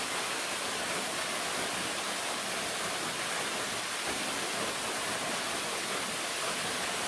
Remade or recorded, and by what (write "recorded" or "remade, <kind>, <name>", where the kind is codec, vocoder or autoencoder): recorded